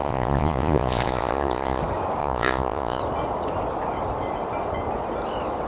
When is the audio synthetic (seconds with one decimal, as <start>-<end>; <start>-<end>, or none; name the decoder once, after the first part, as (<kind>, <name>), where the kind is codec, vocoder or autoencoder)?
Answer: 0.0-1.8 (vocoder, Vocos); 2.2-3.0